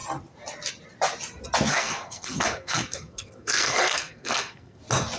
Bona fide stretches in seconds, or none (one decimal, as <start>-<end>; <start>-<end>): 0.0-1.7; 4.8-5.2